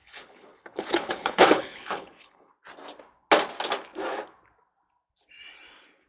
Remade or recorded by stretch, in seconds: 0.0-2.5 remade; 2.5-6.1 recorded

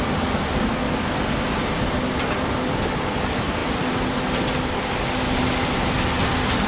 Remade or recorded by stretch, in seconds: 0.0-6.7 recorded

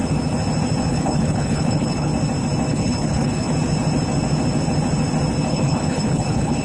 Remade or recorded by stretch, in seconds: 0.0-0.9 recorded; 0.9-2.1 remade; 2.1-2.7 recorded; 2.7-3.5 remade; 3.5-5.5 recorded; 5.5-6.6 remade

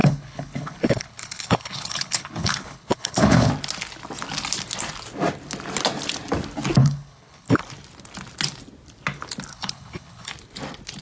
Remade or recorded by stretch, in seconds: 0.0-3.5 remade; 3.5-6.8 recorded; 6.8-7.6 remade; 7.6-9.5 recorded; 9.5-10.3 remade; 10.3-11.0 recorded